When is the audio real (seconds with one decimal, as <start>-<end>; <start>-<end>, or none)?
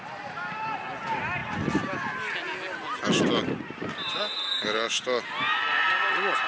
0.0-6.5